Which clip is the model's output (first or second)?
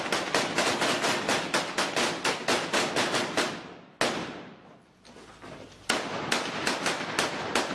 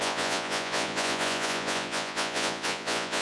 second